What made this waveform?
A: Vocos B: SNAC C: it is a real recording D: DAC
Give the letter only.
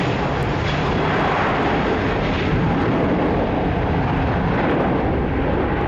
C